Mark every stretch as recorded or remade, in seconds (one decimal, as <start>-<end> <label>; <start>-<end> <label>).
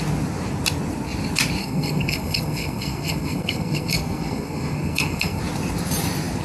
0.0-1.6 recorded; 1.6-5.4 remade; 5.4-6.4 recorded